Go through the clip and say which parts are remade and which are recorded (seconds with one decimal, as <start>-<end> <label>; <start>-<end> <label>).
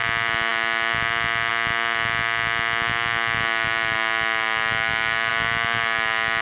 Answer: 0.0-6.4 recorded